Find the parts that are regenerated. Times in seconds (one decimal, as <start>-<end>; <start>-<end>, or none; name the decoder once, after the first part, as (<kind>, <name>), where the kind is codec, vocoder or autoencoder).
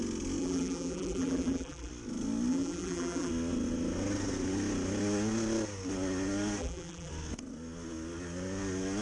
0.4-1.9 (vocoder, BigVGAN v2); 2.5-3.3; 6.6-7.1